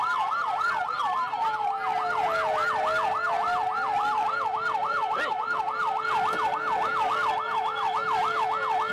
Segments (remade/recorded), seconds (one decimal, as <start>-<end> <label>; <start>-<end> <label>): 0.0-8.9 recorded